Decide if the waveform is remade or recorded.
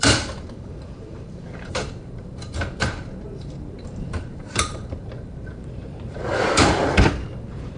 remade